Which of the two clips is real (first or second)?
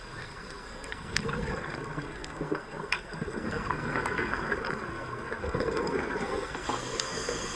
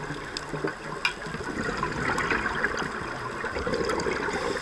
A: second